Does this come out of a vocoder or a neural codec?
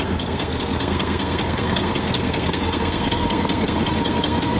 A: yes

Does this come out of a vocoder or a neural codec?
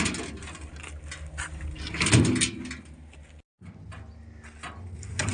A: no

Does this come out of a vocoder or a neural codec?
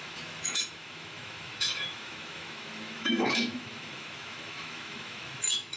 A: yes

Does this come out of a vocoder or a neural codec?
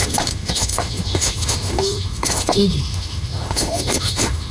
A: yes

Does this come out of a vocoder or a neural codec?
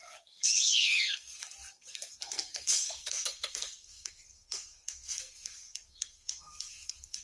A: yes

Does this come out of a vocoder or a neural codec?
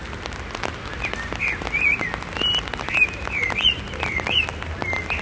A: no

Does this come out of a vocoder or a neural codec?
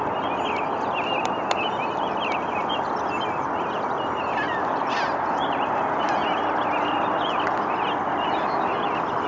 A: no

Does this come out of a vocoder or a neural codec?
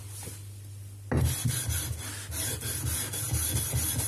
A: no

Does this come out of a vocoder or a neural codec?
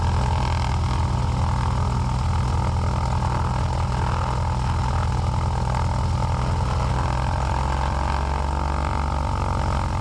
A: no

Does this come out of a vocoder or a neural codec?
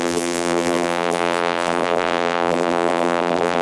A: yes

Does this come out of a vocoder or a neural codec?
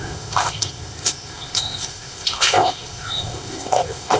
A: yes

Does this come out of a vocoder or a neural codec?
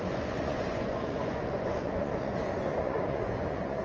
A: yes